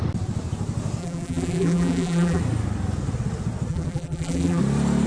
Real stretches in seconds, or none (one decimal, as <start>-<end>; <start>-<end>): 0.0-1.0; 2.4-3.7; 4.6-5.1